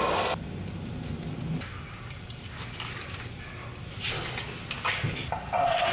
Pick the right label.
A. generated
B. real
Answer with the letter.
B